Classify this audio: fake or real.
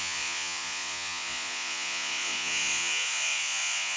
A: fake